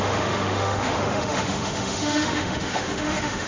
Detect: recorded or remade remade